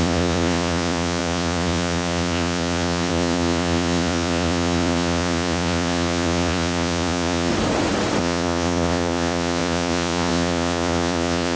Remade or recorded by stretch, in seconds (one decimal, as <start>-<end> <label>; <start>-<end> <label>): 0.0-7.5 remade; 7.5-8.2 recorded; 8.2-11.6 remade